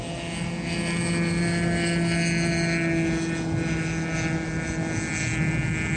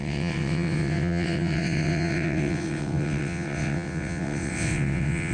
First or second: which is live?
first